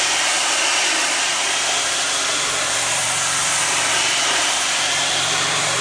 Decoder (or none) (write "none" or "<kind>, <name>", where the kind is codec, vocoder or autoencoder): vocoder, BigVGAN v2